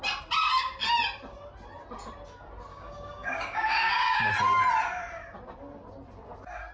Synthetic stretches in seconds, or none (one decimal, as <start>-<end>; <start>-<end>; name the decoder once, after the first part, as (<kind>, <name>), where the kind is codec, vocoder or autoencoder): 2.7-4.3 (codec, DAC)